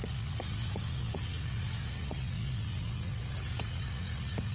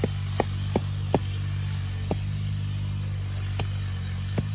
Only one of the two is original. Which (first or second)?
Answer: second